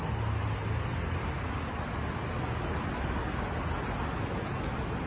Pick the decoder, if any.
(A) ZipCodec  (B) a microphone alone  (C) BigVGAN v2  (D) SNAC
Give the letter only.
B